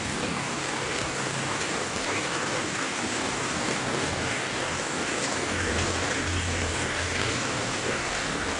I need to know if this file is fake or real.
fake